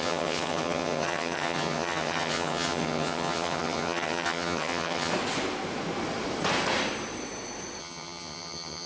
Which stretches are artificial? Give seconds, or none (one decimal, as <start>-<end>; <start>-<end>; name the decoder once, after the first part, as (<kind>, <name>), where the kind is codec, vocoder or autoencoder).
0.0-5.1 (vocoder, HiFi-GAN); 7.8-8.9